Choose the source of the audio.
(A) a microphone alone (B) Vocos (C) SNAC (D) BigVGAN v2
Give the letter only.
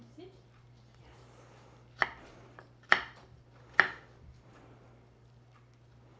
D